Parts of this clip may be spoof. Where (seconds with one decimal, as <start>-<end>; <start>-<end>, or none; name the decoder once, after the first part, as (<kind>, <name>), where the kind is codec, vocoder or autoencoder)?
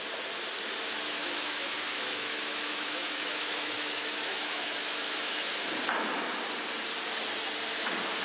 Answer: 1.2-5.5 (autoencoder, DAC-VAE)